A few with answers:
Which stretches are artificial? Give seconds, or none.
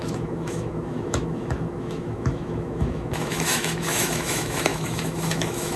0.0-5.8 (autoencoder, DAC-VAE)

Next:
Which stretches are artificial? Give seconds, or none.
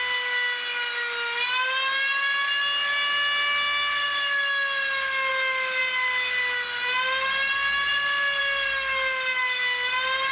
none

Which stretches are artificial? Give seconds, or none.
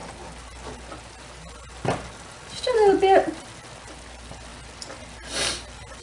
none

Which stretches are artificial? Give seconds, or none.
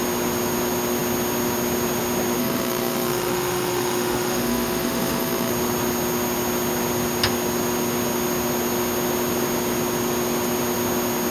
2.4-5.5 (autoencoder, DAC-VAE)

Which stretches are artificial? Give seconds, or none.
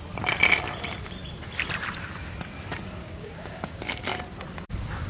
3.0-3.8 (codec, DAC)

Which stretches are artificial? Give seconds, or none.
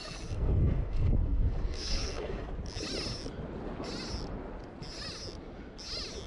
0.0-2.5 (codec, SNAC)